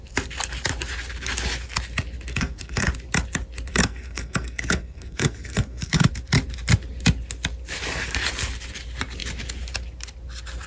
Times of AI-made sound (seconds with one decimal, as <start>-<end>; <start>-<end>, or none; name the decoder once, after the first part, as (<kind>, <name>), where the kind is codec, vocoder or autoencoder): 2.3-2.9 (codec, SNAC); 3.7-6.1